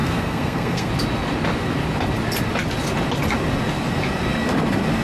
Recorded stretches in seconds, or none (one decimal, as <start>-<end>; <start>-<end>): 0.9-5.0

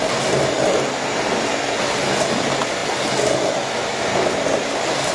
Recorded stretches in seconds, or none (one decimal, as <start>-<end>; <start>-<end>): 0.0-5.1

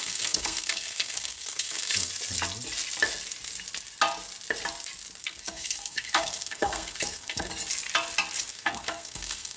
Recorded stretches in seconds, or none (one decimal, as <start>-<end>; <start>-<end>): 2.1-5.2; 7.5-8.5